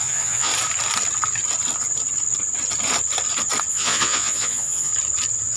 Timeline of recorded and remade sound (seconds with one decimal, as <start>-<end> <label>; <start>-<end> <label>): 0.0-0.5 remade; 0.5-3.7 recorded; 3.7-4.9 remade; 4.9-5.6 recorded